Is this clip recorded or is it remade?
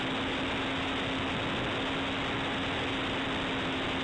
recorded